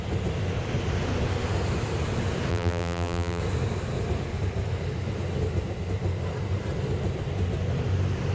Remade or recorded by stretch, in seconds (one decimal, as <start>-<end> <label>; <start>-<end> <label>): 0.0-2.5 recorded; 2.5-3.4 remade; 3.4-8.3 recorded